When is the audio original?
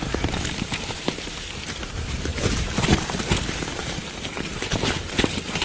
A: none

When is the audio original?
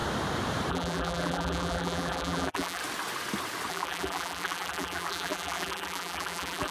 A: 0.0-0.7; 2.8-3.7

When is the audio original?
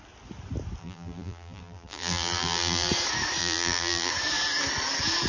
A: 0.0-0.8; 2.9-3.4; 4.1-5.3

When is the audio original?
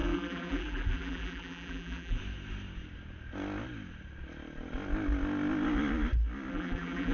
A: 2.2-6.5